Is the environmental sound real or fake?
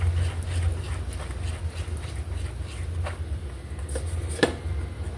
real